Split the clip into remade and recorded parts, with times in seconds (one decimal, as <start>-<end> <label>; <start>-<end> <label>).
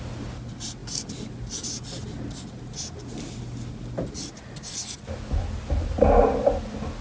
0.0-7.0 recorded